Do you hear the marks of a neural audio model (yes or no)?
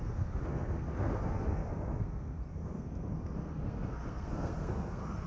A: yes